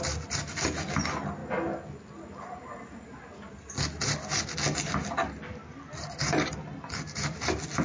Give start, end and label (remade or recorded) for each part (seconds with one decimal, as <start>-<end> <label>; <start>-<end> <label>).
0.0-7.8 recorded